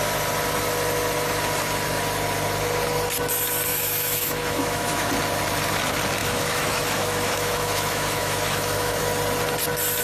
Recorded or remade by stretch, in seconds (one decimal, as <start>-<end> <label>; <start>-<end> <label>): 0.0-3.7 recorded; 3.7-5.1 remade; 5.1-6.2 recorded; 6.2-9.0 remade; 9.0-10.0 recorded

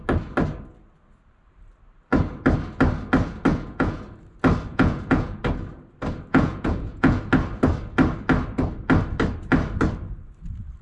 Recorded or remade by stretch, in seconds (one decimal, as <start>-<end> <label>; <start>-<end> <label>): 0.0-3.5 recorded; 3.5-4.0 remade; 4.0-4.7 recorded; 4.7-5.4 remade; 5.4-6.3 recorded; 6.3-7.2 remade; 7.2-10.8 recorded

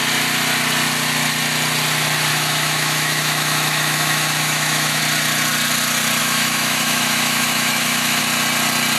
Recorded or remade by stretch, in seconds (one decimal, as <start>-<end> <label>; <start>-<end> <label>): 0.0-2.3 recorded; 2.3-5.0 remade; 5.0-6.2 recorded; 6.2-8.2 remade; 8.2-9.0 recorded

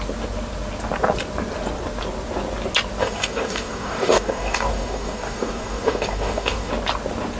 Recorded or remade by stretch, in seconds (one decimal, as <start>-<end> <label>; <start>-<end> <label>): 0.0-3.0 recorded; 3.0-6.7 remade; 6.7-7.4 recorded

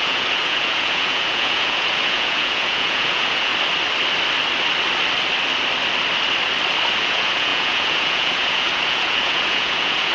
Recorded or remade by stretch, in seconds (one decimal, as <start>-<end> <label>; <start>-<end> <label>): 0.0-3.5 remade; 3.5-7.0 recorded; 7.0-10.1 remade